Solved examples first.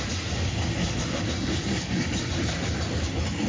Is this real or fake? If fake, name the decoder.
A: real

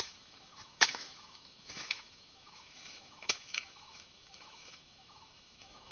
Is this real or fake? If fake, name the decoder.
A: fake, autoencoder, DAC-VAE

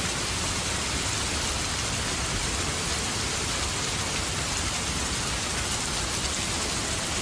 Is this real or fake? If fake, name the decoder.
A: real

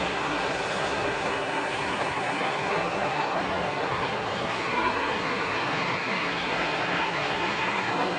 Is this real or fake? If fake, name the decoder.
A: fake, codec, SNAC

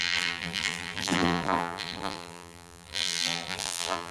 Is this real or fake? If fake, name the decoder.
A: fake, vocoder, BigVGAN v2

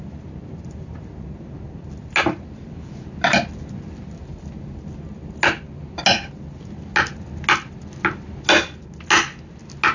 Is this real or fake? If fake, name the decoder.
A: real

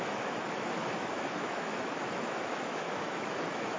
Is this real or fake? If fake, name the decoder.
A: fake, autoencoder, DAC-VAE